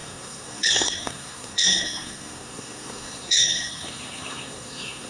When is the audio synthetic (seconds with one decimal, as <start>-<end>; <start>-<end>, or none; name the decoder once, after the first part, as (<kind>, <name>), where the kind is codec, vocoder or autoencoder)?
0.0-5.1 (codec, SNAC)